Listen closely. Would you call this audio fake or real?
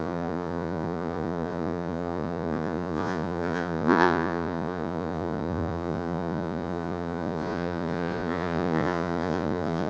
fake